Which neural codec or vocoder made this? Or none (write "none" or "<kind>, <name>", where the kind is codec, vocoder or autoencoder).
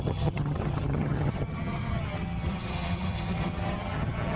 vocoder, HiFi-GAN